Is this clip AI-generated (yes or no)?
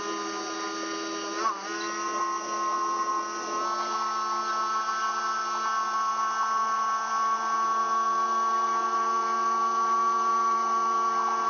no